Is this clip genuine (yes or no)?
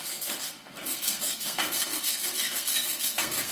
no